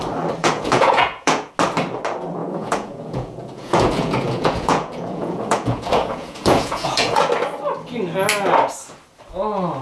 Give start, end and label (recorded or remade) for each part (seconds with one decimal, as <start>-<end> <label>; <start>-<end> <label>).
0.0-0.4 recorded; 0.4-1.5 remade; 1.5-2.4 recorded; 2.4-7.3 remade; 7.3-9.8 recorded